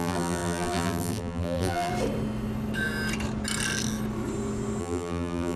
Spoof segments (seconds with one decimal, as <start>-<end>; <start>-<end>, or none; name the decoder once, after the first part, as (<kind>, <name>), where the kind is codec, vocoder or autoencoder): 0.0-1.9 (vocoder, BigVGAN v2); 4.8-5.6